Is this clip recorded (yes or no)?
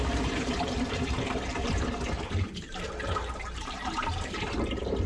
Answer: no